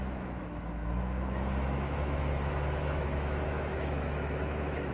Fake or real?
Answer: fake